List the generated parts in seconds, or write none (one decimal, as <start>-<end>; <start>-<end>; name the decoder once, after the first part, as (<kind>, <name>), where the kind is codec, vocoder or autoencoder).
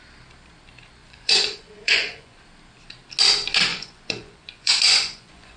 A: 1.0-2.4 (vocoder, Vocos); 3.7-5.6